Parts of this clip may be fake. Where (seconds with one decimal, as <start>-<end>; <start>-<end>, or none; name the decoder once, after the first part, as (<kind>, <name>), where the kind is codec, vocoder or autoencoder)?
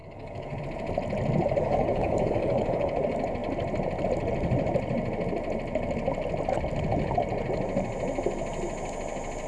0.0-0.6 (codec, DAC); 1.6-2.9